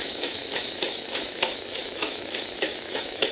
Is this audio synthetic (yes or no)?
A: yes